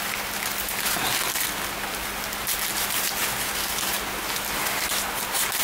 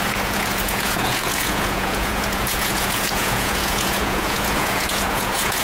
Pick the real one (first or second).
first